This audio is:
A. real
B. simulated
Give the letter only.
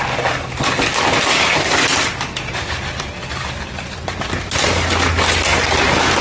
A